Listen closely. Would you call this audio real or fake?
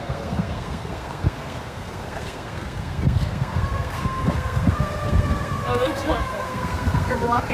fake